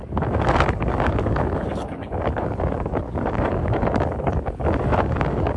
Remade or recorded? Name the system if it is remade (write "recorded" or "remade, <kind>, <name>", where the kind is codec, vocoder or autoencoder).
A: remade, codec, DAC